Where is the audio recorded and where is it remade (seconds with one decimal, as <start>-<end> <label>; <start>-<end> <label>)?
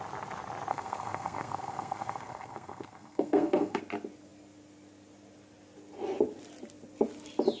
0.0-0.7 recorded; 0.7-3.8 remade; 3.8-7.6 recorded